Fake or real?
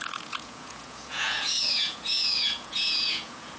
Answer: fake